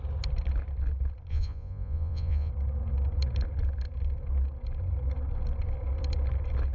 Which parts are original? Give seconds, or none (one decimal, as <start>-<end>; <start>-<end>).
0.0-1.3; 2.5-6.7